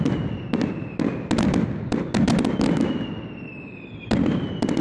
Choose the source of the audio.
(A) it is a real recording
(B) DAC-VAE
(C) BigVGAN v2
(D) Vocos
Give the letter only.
A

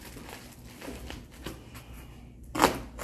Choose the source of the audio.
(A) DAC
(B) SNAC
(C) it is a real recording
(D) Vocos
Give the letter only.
C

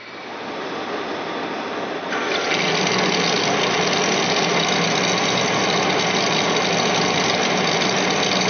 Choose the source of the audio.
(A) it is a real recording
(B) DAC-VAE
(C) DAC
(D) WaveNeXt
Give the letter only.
A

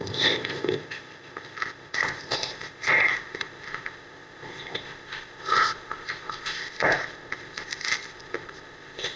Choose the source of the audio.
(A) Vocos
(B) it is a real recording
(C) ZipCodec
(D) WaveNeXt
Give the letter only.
C